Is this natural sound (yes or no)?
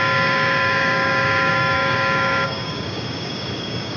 no